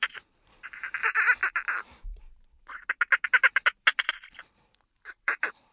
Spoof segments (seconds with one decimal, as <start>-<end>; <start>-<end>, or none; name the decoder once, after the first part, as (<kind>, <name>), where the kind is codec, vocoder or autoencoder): 0.0-1.4 (vocoder, BigVGAN v2); 4.1-5.7